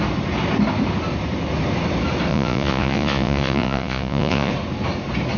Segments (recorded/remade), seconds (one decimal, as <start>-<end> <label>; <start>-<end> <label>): 0.0-2.3 recorded; 2.3-4.5 remade; 4.5-5.4 recorded